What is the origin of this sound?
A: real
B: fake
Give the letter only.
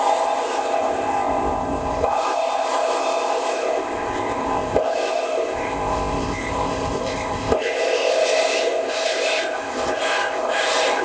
B